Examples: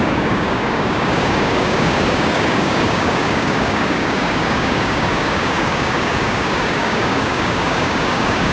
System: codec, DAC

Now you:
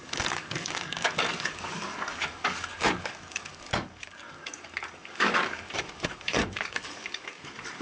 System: codec, DAC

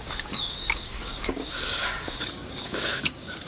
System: codec, DAC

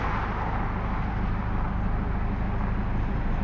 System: none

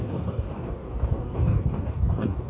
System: codec, DAC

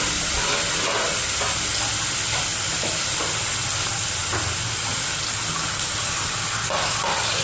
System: none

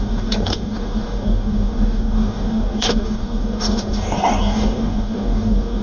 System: codec, DAC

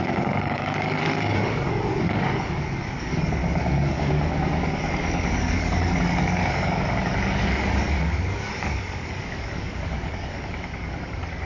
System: codec, DAC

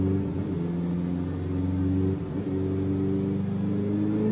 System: none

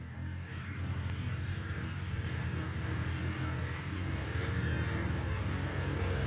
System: codec, DAC